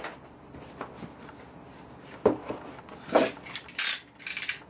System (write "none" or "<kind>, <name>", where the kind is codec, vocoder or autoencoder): none